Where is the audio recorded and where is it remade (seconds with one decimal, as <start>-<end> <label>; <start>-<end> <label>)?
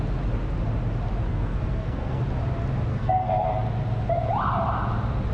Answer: 0.0-1.3 recorded; 1.3-2.2 remade; 2.2-2.9 recorded; 2.9-3.5 remade; 3.5-5.3 recorded